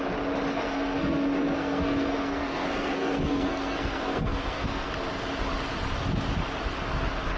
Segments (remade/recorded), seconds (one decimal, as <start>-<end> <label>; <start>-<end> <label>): 0.0-0.5 recorded; 0.5-4.9 remade; 4.9-7.4 recorded